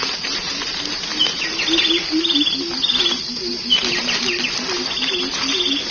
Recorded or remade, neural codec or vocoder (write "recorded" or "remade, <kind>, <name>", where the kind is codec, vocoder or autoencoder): recorded